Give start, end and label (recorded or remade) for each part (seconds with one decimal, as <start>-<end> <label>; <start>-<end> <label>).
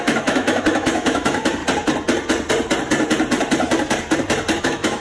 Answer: 0.0-1.6 remade; 1.6-4.6 recorded; 4.6-5.0 remade